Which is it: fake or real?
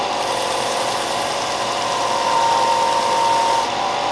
real